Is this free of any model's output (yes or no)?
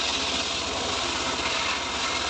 yes